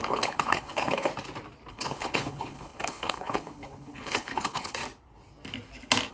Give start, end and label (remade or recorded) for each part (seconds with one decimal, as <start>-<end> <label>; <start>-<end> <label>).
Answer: 0.0-1.1 remade; 1.1-1.7 recorded; 1.7-4.8 remade; 4.8-6.1 recorded